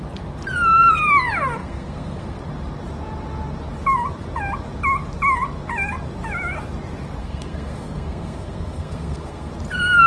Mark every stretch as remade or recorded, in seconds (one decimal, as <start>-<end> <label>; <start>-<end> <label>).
0.0-1.6 recorded; 1.6-2.4 remade; 2.4-7.2 recorded; 7.2-9.5 remade; 9.5-10.1 recorded